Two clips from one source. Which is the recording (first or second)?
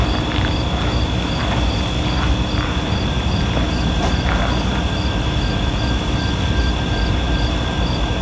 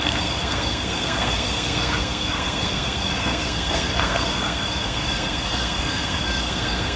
first